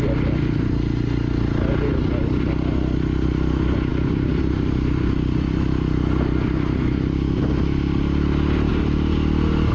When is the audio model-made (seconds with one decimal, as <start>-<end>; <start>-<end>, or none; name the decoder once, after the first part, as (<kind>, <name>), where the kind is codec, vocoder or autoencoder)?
none